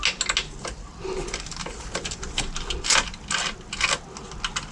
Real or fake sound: real